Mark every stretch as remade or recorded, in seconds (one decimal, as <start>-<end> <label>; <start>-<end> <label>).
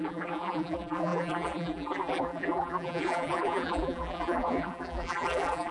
0.0-5.7 remade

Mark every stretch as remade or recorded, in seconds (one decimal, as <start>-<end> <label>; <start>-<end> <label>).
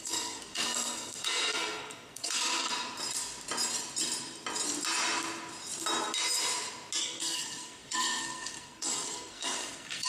0.0-2.7 remade; 2.7-7.0 recorded; 7.0-10.1 remade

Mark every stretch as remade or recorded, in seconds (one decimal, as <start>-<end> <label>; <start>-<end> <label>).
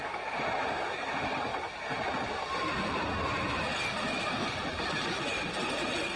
0.0-6.2 recorded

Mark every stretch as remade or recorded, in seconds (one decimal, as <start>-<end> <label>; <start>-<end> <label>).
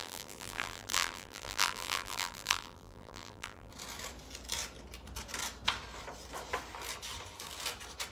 0.0-3.7 remade; 3.7-8.1 recorded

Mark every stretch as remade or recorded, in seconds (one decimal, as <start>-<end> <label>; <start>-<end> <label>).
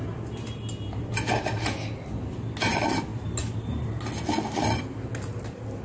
0.0-5.8 recorded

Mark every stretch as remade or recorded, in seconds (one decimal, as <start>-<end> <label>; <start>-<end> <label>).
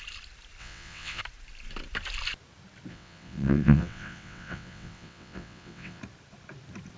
0.0-0.6 recorded; 0.6-1.2 remade; 1.2-2.9 recorded; 2.9-6.0 remade; 6.0-7.0 recorded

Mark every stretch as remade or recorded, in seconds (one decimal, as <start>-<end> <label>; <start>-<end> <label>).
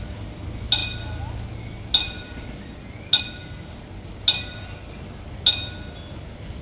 0.0-6.6 recorded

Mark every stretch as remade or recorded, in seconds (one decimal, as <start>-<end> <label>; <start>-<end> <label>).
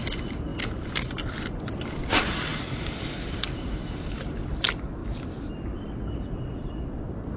0.0-2.5 recorded; 2.5-4.5 remade; 4.5-5.0 recorded; 5.0-5.5 remade; 5.5-7.4 recorded